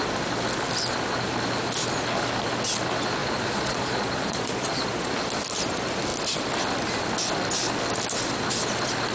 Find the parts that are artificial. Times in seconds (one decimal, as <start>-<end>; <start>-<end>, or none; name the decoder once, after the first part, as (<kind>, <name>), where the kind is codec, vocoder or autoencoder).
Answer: 3.2-5.1 (vocoder, Vocos)